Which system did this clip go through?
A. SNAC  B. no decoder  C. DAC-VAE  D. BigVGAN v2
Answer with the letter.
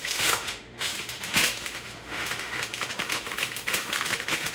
C